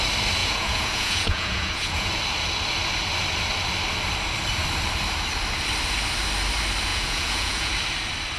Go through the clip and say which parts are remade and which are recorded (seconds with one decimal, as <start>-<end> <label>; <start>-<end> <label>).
0.0-0.4 recorded; 0.4-2.1 remade; 2.1-6.9 recorded; 6.9-7.7 remade; 7.7-8.4 recorded